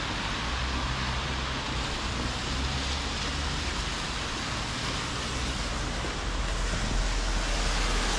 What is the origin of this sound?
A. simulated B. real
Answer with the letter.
B